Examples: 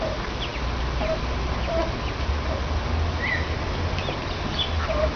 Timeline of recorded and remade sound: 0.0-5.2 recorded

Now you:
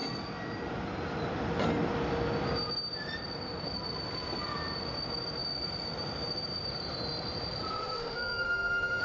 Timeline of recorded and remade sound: 0.0-7.7 recorded; 7.7-9.0 remade

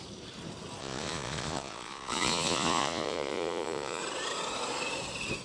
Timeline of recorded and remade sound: 0.0-0.8 recorded; 0.8-4.0 remade; 4.0-5.4 recorded

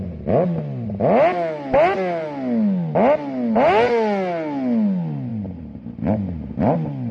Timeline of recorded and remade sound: 0.0-7.1 recorded

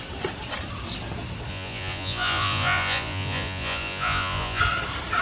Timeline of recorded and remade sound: 0.0-1.5 recorded; 1.5-4.6 remade; 4.6-5.2 recorded

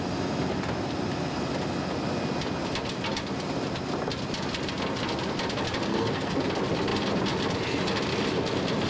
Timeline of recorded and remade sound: 0.0-5.9 recorded; 5.9-6.4 remade; 6.4-8.9 recorded

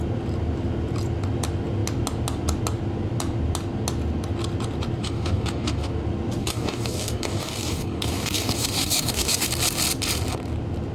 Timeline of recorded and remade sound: 0.0-5.0 recorded; 5.0-5.9 remade; 5.9-6.4 recorded; 6.4-9.5 remade; 9.5-10.9 recorded